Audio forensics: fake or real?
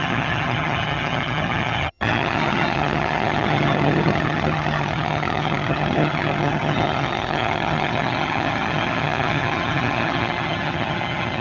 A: fake